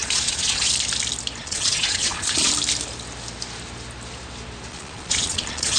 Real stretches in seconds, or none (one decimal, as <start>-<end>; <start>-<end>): 0.7-1.4; 2.5-4.7